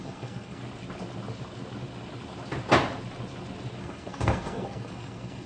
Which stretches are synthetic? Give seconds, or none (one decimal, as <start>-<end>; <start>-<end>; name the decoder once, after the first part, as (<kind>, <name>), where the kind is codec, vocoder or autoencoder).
0.0-0.6 (codec, SNAC); 3.8-5.5